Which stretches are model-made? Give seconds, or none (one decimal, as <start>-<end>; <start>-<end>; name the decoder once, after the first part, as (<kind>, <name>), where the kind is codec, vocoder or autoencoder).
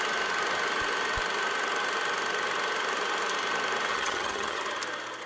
3.9-4.6 (vocoder, HiFi-GAN)